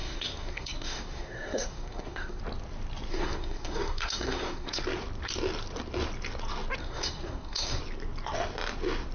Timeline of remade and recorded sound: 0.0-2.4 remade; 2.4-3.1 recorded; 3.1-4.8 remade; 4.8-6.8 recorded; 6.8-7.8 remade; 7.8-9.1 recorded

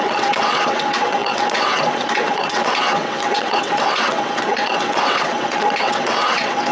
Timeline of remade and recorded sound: 0.0-6.7 remade

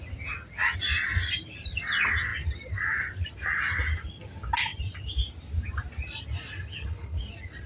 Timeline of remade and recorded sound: 0.0-6.7 recorded; 6.7-7.2 remade; 7.2-7.7 recorded

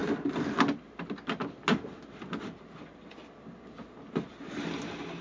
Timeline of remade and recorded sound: 0.0-5.2 recorded

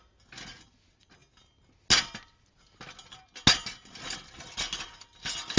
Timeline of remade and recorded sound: 0.0-5.6 recorded

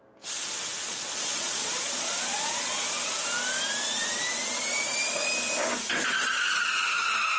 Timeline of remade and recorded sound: 0.0-0.8 recorded; 0.8-2.8 remade; 2.8-7.4 recorded

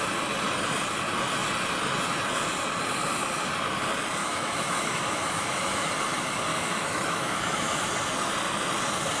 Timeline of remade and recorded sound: 0.0-4.2 recorded; 4.2-5.9 remade; 5.9-6.5 recorded; 6.5-7.9 remade; 7.9-9.2 recorded

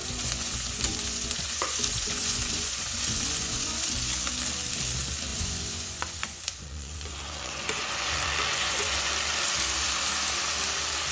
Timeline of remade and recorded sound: 0.0-3.9 remade; 3.9-5.3 recorded; 5.3-9.1 remade; 9.1-11.1 recorded